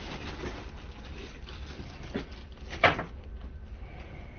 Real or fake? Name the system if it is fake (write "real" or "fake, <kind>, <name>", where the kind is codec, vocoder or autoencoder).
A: real